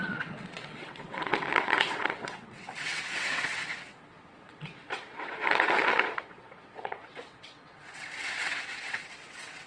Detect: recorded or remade remade